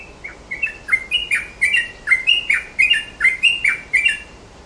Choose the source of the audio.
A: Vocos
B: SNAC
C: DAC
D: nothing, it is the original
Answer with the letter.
D